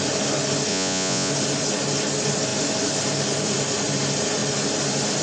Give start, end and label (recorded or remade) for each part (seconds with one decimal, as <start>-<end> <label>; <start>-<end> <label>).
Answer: 0.0-0.7 recorded; 0.7-1.3 remade; 1.3-5.2 recorded